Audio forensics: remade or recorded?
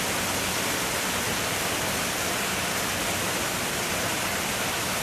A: recorded